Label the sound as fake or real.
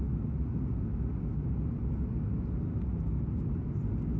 real